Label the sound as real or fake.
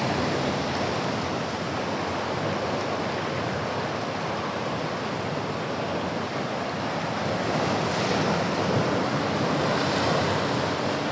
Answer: real